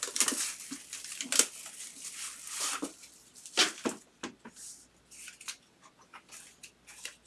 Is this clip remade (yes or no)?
no